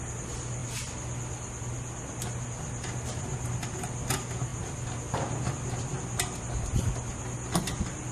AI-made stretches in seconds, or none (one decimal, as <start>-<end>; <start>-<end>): none